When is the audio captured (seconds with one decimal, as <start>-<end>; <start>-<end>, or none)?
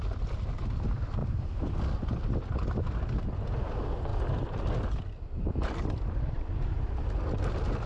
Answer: 0.0-1.2; 2.3-4.1; 7.4-7.9